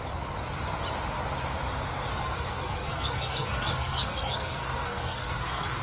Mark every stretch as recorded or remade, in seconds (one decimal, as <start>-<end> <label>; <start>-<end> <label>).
0.0-2.1 recorded; 2.1-5.8 remade